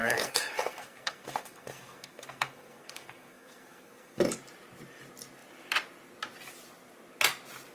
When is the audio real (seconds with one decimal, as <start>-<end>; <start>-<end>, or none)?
4.2-7.7